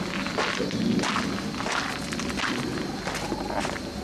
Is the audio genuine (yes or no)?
yes